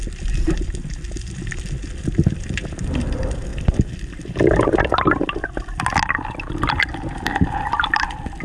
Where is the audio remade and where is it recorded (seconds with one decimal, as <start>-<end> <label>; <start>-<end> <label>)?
0.0-3.5 recorded; 3.5-4.8 remade; 4.8-8.4 recorded